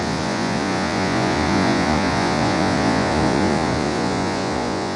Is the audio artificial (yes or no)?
yes